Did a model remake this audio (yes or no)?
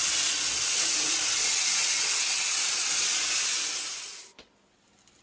no